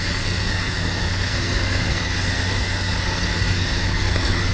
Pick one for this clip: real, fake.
fake